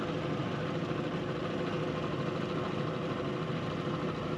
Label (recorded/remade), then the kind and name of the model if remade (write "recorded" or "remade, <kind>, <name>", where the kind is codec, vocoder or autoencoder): recorded